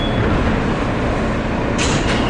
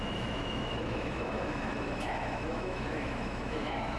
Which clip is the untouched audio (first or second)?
first